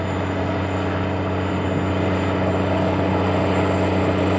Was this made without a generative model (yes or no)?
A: yes